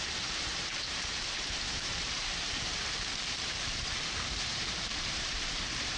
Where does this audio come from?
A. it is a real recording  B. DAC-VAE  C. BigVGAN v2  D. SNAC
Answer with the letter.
C